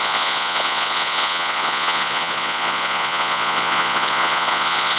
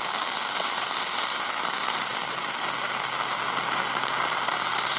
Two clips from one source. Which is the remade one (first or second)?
first